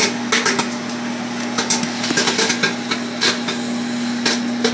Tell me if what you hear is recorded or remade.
recorded